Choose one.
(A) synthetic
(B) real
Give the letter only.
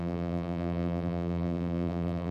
A